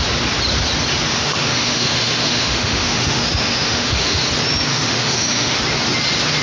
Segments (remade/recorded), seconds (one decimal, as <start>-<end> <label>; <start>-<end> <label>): 0.0-1.1 recorded; 1.1-4.3 remade; 4.3-4.7 recorded; 4.7-5.6 remade; 5.6-6.4 recorded